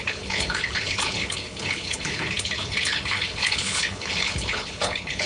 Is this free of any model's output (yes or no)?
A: no